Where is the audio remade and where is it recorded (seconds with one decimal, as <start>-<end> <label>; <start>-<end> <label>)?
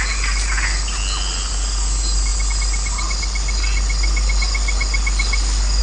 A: 0.0-5.8 recorded